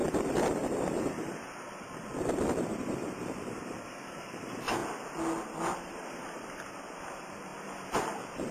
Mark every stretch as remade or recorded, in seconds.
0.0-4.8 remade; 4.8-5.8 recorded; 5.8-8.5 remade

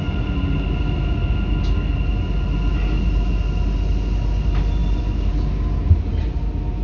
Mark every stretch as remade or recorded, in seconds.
0.0-6.8 recorded

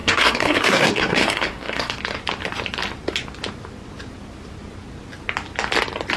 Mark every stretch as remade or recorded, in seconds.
0.0-2.0 remade; 2.0-6.2 recorded

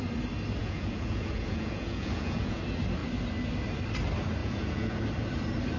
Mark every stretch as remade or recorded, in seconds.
0.0-0.6 recorded; 0.6-2.6 remade; 2.6-4.4 recorded; 4.4-5.0 remade; 5.0-5.8 recorded

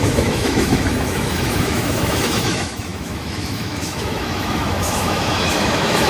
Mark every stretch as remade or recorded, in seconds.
0.0-6.1 remade

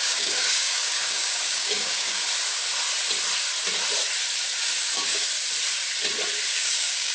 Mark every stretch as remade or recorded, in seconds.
0.0-2.2 remade; 2.2-4.8 recorded; 4.8-5.2 remade; 5.2-6.5 recorded; 6.5-7.1 remade

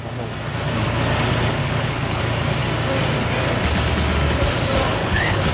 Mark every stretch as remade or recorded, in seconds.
0.0-1.6 recorded; 1.6-2.2 remade; 2.2-5.0 recorded; 5.0-5.5 remade